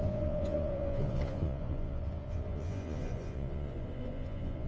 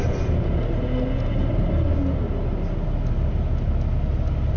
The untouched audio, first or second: second